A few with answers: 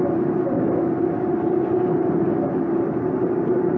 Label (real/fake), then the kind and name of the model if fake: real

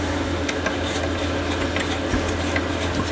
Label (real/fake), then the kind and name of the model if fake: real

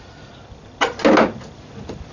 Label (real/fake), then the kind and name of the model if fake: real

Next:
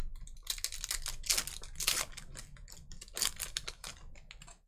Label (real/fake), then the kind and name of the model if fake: real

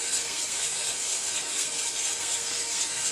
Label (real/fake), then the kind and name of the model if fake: fake, codec, SNAC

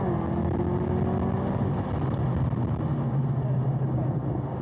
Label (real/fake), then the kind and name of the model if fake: real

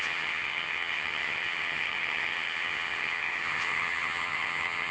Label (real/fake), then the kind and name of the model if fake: fake, vocoder, HiFi-GAN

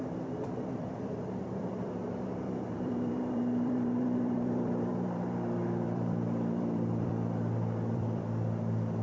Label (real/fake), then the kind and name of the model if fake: fake, vocoder, BigVGAN v2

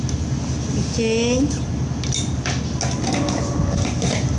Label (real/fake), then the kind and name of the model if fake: real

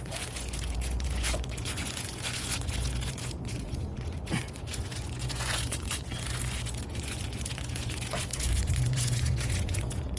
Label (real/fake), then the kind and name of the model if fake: fake, vocoder, Vocos